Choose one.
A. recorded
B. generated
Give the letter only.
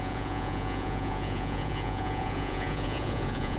B